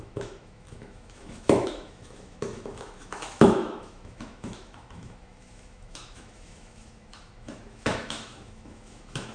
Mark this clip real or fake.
fake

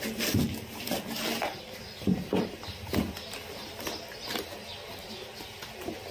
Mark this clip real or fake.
real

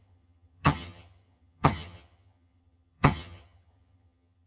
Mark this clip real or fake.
fake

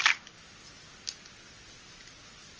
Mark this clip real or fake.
real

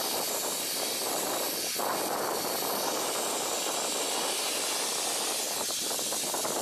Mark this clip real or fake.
real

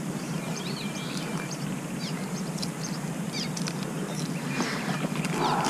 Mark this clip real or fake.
fake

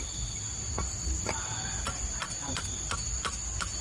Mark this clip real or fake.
real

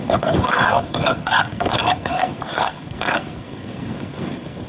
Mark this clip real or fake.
fake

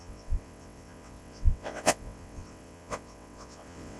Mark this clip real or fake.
fake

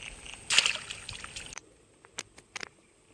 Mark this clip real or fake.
real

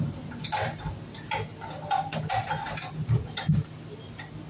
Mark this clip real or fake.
real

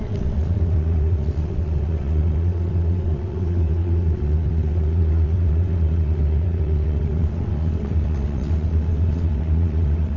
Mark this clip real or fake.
fake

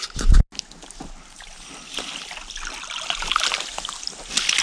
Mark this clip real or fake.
real